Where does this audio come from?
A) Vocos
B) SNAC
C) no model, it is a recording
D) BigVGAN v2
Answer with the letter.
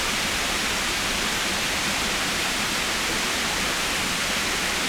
C